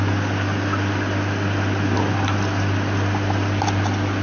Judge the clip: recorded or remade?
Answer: recorded